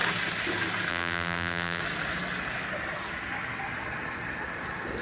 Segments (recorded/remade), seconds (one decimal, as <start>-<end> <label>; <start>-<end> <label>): 0.0-0.9 recorded; 0.9-1.8 remade; 1.8-5.0 recorded

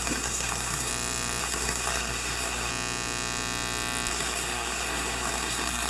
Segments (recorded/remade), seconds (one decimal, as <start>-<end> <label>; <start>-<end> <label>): 0.0-0.9 remade; 0.9-1.4 recorded; 1.4-2.7 remade; 2.7-4.1 recorded; 4.1-5.9 remade